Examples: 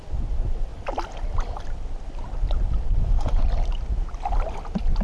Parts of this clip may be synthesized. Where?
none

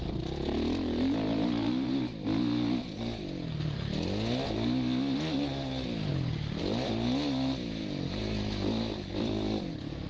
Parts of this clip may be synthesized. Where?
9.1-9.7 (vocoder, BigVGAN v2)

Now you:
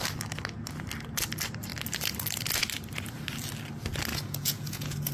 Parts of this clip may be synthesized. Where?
4.1-5.1 (vocoder, Vocos)

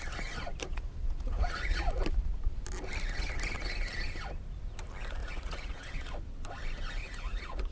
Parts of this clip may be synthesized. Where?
0.7-1.9 (vocoder, Vocos); 5.2-6.0; 7.0-7.7

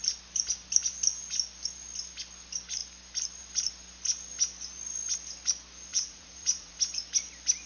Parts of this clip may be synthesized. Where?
5.9-6.8 (vocoder, Vocos)

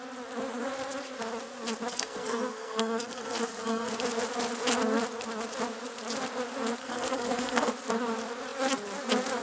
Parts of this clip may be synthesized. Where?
1.9-3.9 (codec, SNAC); 6.8-7.7